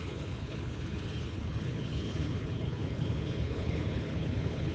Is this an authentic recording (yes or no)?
no